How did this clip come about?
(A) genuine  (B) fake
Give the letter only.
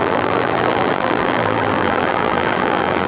B